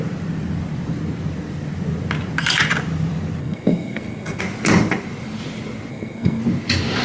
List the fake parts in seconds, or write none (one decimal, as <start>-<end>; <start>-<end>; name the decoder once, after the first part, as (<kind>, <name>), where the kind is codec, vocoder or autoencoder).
3.4-4.4 (codec, SNAC); 5.9-6.4